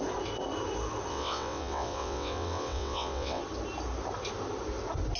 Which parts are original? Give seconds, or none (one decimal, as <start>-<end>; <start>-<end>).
0.0-1.1; 3.4-5.2